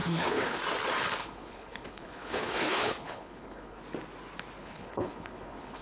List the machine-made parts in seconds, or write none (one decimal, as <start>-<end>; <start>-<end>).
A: 0.0-0.6; 1.2-3.8; 4.6-5.8